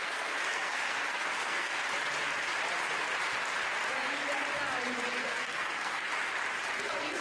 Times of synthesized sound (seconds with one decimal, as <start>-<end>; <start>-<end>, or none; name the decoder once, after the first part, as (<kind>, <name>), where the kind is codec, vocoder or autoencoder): 0.0-1.8 (codec, SNAC); 5.2-6.1; 6.7-7.2